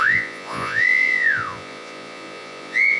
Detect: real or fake fake